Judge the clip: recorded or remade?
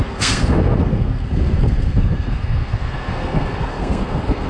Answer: remade